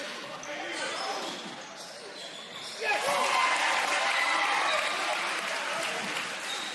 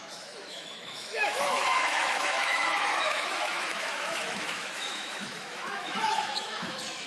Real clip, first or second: first